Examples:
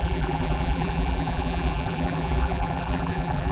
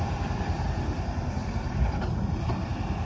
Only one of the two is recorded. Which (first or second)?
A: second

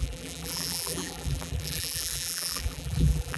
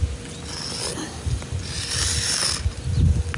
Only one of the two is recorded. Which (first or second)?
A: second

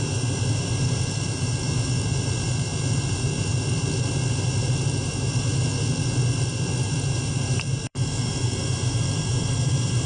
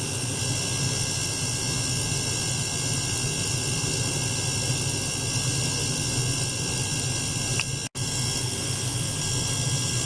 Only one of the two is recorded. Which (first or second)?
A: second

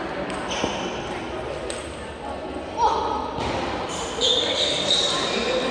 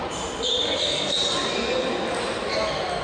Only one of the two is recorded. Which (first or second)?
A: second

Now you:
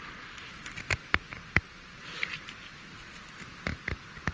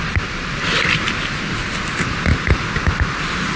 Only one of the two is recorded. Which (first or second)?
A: second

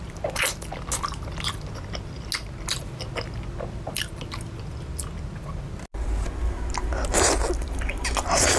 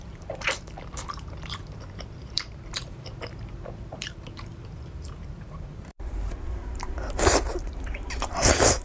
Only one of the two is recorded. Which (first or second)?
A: first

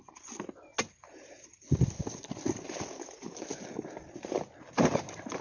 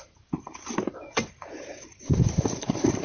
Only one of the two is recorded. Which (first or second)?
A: first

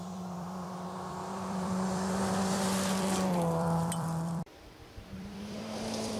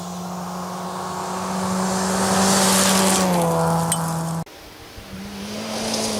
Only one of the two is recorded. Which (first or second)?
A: second